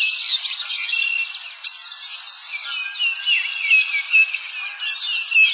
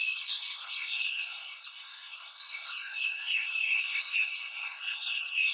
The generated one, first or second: second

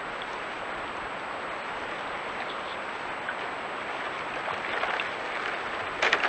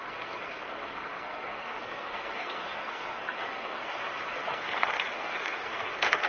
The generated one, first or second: second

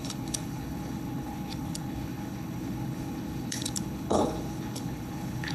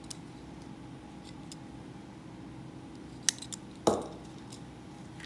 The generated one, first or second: first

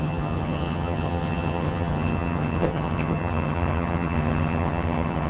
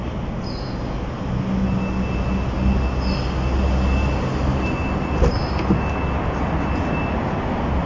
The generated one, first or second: first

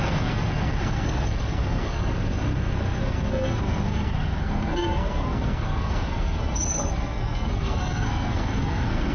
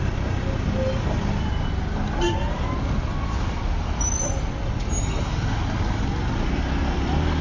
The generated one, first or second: first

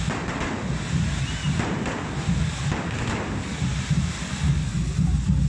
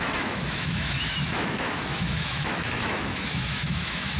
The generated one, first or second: second